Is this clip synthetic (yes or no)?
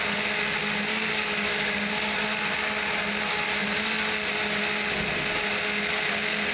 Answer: no